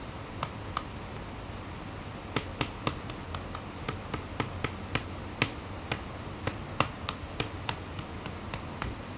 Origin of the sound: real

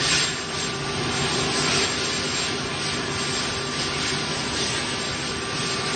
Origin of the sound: real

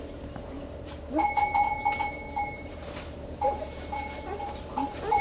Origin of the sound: fake